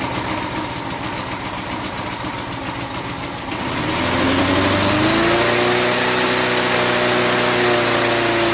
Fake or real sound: real